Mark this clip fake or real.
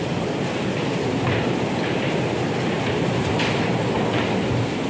real